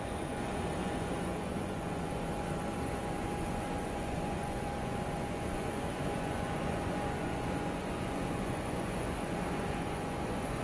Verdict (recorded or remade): remade